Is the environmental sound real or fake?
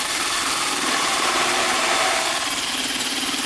fake